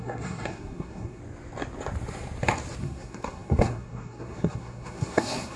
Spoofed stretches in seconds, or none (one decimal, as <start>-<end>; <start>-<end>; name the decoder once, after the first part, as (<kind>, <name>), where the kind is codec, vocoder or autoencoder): 0.0-1.2 (codec, SNAC); 2.8-5.6